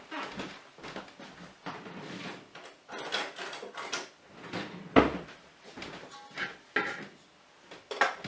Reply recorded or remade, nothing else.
recorded